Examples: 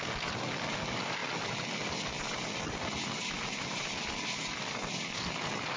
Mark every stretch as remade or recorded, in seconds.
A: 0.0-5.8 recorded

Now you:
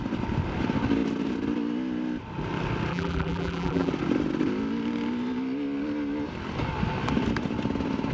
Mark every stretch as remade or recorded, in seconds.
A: 0.0-2.9 recorded; 2.9-3.9 remade; 3.9-8.1 recorded